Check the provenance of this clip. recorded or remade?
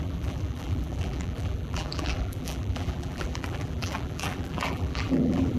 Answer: remade